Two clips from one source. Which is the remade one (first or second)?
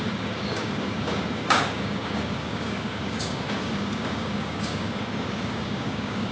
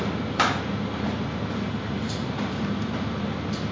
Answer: first